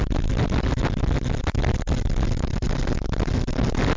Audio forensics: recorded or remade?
recorded